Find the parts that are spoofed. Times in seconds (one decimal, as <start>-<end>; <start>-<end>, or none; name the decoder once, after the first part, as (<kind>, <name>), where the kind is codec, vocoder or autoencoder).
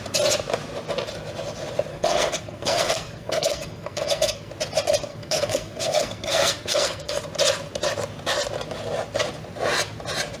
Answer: 1.9-4.5 (codec, SNAC); 5.1-7.2